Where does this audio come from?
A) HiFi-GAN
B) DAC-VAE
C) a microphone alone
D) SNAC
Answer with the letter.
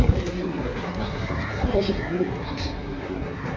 D